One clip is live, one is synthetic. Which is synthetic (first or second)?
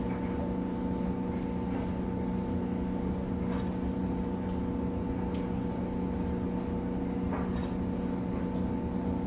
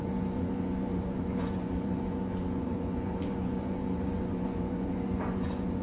second